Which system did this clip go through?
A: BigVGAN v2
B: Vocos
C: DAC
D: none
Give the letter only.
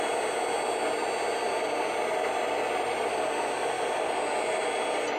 D